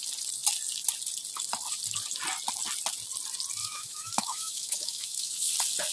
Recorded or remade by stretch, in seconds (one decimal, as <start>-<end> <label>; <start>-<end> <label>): 0.0-3.6 recorded; 3.6-5.5 remade; 5.5-5.9 recorded